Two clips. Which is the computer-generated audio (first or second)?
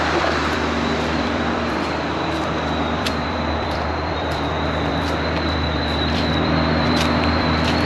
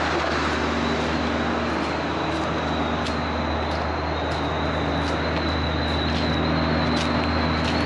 first